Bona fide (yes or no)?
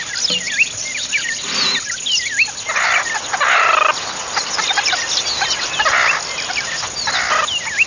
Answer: yes